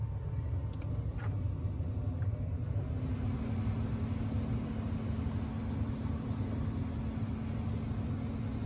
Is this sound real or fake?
real